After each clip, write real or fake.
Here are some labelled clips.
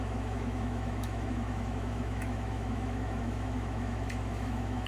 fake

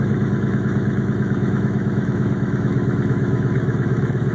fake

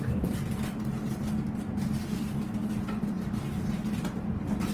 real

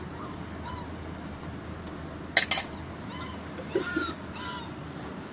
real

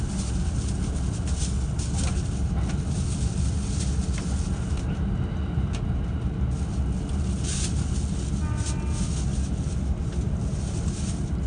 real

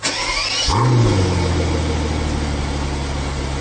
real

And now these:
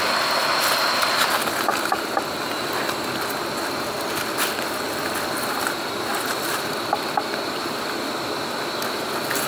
real